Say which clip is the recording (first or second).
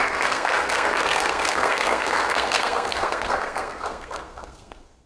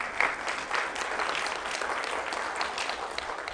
second